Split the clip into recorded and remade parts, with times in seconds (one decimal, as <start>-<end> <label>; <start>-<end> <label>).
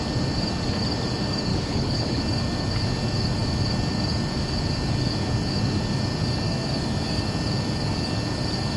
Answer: 0.0-1.5 recorded; 1.5-2.2 remade; 2.2-8.8 recorded